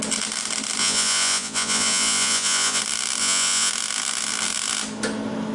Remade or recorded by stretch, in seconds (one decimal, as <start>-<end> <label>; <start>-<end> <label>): 0.0-0.8 recorded; 0.8-2.8 remade; 2.8-3.2 recorded; 3.2-3.7 remade; 3.7-5.5 recorded